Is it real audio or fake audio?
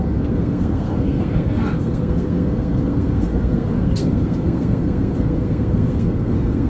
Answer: fake